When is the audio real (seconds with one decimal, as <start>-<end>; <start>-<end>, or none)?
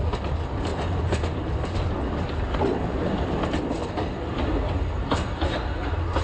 0.0-6.2